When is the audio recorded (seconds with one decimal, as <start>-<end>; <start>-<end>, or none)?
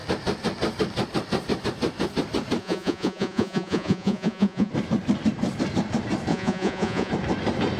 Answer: 0.0-2.6; 4.7-6.3; 7.1-7.8